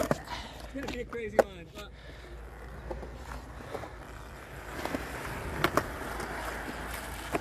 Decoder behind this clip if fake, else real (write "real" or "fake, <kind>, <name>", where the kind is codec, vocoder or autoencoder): real